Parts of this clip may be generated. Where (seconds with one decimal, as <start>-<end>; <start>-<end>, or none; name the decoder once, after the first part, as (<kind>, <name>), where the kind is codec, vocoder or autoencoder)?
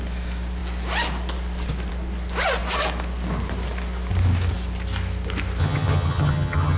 5.6-6.8 (vocoder, HiFi-GAN)